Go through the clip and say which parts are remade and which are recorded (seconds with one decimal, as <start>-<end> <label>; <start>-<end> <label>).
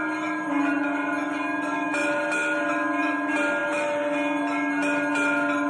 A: 0.0-5.7 recorded